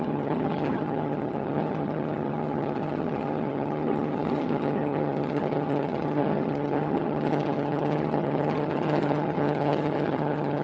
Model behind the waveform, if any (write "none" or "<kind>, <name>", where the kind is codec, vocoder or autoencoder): vocoder, HiFi-GAN